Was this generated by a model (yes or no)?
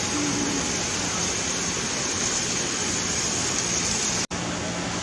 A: no